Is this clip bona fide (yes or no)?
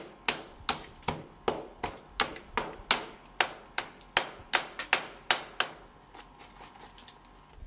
yes